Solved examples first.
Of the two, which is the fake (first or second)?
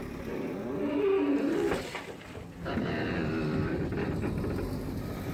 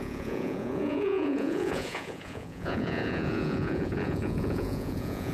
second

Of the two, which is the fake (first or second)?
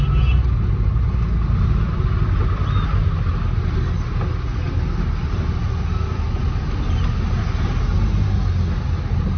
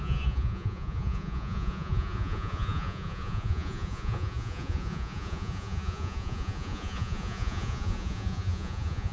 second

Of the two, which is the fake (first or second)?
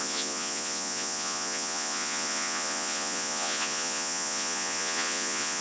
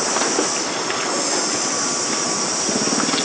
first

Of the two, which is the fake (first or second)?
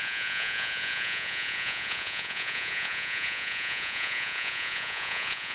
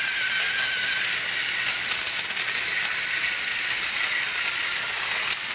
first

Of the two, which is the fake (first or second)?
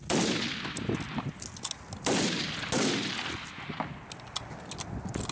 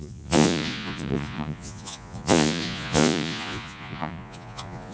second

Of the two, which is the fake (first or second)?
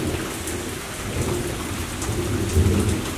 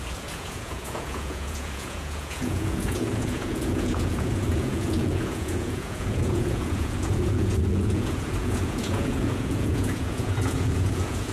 second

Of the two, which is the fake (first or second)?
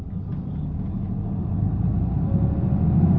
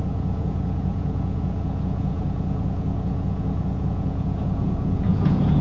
second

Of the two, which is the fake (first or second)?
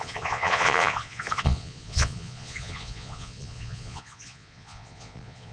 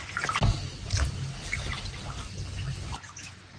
first